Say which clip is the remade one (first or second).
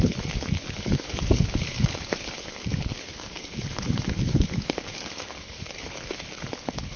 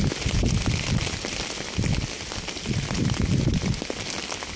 first